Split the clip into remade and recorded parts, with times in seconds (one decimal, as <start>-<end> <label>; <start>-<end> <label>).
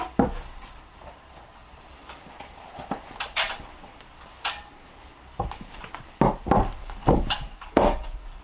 0.0-6.8 recorded; 6.8-8.4 remade